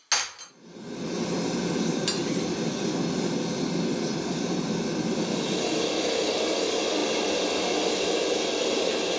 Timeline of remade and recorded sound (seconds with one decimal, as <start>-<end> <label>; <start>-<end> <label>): 0.0-9.2 recorded